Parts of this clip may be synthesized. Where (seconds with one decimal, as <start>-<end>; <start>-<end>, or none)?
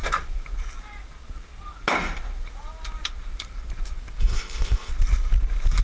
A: 4.2-4.9